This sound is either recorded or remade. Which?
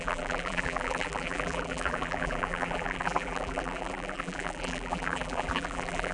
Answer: remade